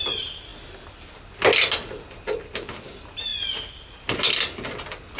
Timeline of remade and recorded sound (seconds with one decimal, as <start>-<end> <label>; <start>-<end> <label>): 0.0-5.2 recorded